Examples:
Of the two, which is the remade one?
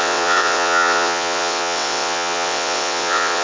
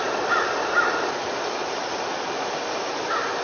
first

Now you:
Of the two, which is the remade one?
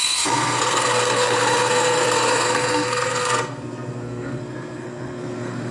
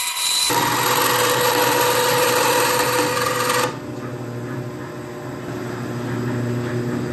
first